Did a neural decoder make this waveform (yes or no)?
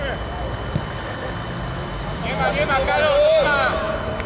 no